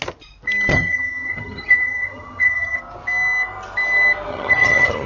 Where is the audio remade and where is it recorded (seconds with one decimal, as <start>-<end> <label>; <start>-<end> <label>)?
0.0-0.7 recorded; 0.7-2.8 remade; 2.8-4.3 recorded; 4.3-5.1 remade

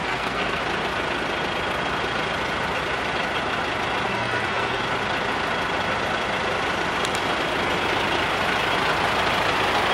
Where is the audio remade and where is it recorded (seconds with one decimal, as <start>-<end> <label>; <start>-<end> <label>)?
0.0-0.6 remade; 0.6-4.1 recorded; 4.1-4.8 remade; 4.8-9.9 recorded